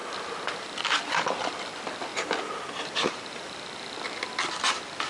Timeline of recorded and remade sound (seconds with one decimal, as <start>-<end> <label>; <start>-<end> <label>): 0.0-2.1 recorded; 2.1-3.2 remade; 3.2-5.1 recorded